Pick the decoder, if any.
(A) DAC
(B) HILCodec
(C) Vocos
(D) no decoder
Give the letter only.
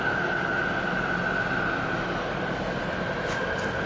D